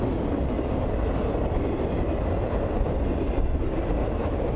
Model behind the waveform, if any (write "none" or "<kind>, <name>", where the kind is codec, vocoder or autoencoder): none